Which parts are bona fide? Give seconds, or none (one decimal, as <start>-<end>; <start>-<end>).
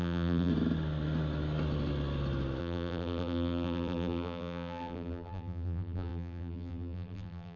0.5-2.6